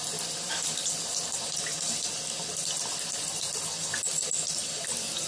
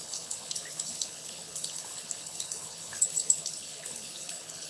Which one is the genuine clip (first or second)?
first